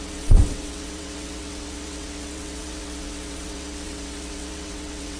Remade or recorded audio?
remade